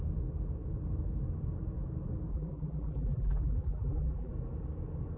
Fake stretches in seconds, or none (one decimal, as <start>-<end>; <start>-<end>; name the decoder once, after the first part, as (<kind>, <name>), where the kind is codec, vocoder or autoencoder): 2.3-4.3 (vocoder, BigVGAN v2)